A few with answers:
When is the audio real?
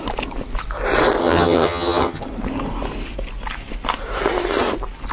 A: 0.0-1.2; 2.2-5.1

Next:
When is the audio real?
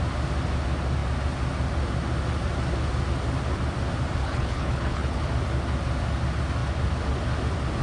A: 0.0-4.2; 5.2-7.8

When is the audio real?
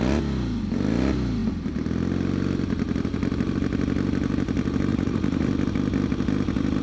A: 0.0-4.9; 5.5-6.8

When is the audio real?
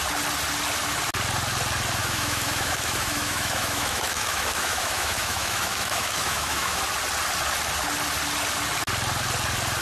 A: 0.0-2.0; 6.8-9.8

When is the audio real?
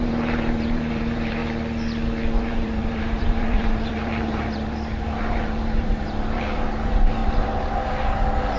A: 1.4-2.4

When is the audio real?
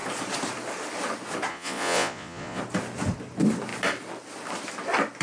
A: 0.0-1.5; 2.6-5.2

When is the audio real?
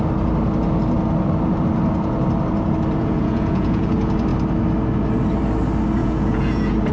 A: 0.0-3.0; 3.9-6.0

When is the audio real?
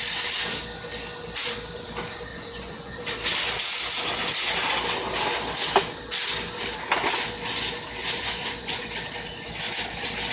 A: 0.0-2.3; 3.0-8.0; 8.8-10.3